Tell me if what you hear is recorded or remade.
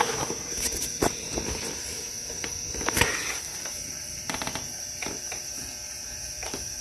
remade